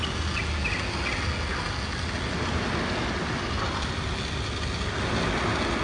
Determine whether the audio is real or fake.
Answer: real